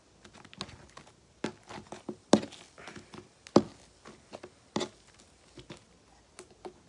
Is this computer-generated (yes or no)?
no